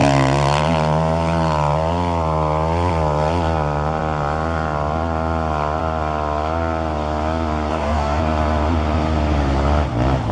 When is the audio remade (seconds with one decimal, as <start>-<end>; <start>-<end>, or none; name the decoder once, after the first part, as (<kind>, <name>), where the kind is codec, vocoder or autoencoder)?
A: 7.7-8.2 (codec, DAC)